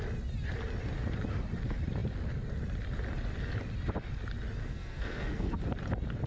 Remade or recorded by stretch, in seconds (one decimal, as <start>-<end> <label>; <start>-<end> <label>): 0.0-4.6 recorded; 4.6-5.6 remade; 5.6-6.3 recorded